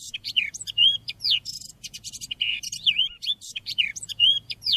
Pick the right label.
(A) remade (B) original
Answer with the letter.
A